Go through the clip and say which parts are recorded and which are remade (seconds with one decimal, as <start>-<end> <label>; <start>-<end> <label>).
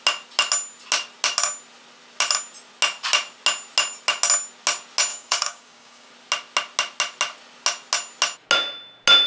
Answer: 0.0-5.1 recorded; 5.1-6.1 remade; 6.1-9.3 recorded